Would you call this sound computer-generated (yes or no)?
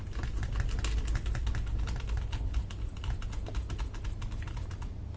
no